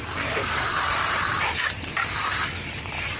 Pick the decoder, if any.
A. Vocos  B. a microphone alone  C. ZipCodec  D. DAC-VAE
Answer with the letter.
B